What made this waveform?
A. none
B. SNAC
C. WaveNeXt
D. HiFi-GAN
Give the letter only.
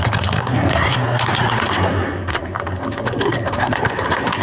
B